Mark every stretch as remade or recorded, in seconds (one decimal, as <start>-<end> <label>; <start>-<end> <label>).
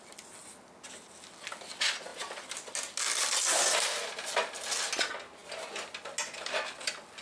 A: 0.0-7.2 recorded